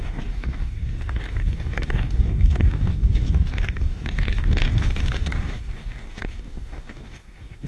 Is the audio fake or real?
fake